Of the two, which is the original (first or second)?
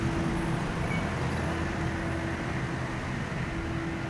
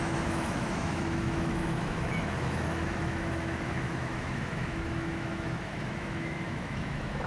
first